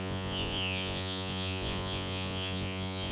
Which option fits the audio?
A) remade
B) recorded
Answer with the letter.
A